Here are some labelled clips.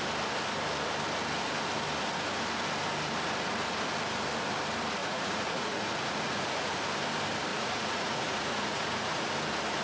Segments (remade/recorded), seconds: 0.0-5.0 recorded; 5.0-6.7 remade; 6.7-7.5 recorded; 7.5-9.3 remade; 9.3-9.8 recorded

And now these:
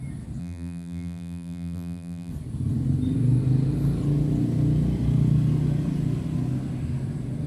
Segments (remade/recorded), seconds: 0.0-0.4 recorded; 0.4-2.3 remade; 2.3-7.5 recorded

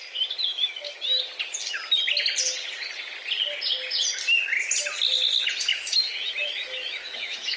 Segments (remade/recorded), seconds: 0.0-0.5 recorded; 0.5-1.2 remade; 1.2-5.7 recorded; 5.7-7.6 remade

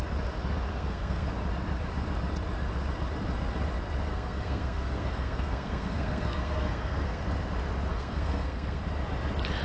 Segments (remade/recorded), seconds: 0.0-0.7 recorded; 0.7-1.3 remade; 1.3-4.1 recorded; 4.1-7.2 remade; 7.2-7.9 recorded; 7.9-8.8 remade; 8.8-9.6 recorded

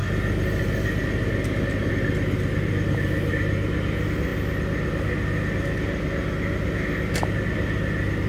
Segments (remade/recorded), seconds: 0.0-8.3 recorded

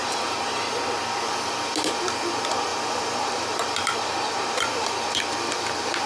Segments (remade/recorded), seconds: 0.0-0.7 remade; 0.7-2.7 recorded; 2.7-5.2 remade; 5.2-6.1 recorded

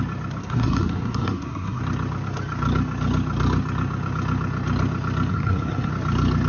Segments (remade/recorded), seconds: 0.0-0.4 recorded; 0.4-1.8 remade; 1.8-5.3 recorded; 5.3-5.9 remade; 5.9-6.5 recorded

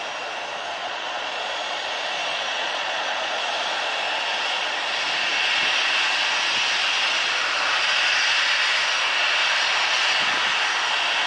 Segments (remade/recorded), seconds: 0.0-0.8 recorded; 0.8-1.6 remade; 1.6-2.3 recorded; 2.3-3.4 remade; 3.4-11.3 recorded